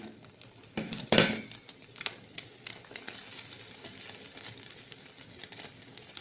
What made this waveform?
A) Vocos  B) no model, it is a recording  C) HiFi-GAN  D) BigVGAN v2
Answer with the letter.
B